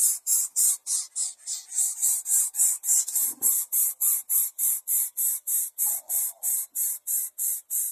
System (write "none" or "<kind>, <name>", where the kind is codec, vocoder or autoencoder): none